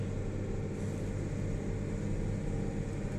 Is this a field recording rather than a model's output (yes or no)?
yes